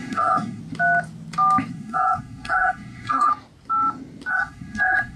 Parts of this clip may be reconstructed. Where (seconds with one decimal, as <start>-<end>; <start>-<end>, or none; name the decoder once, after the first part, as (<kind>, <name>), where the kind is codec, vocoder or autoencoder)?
0.0-0.6 (codec, SNAC); 1.7-3.3; 4.3-5.2